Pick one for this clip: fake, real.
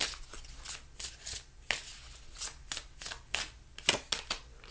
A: real